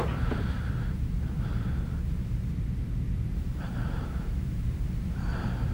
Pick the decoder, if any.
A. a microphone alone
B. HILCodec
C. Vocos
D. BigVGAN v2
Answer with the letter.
D